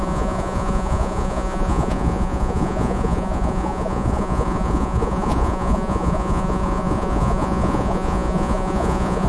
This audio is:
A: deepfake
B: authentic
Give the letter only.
A